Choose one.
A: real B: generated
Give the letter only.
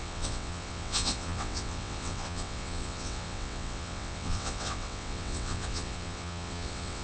B